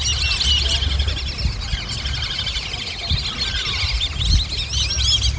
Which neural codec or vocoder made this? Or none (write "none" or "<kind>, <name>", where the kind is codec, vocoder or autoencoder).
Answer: none